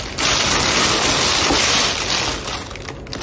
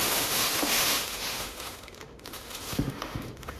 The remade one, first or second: second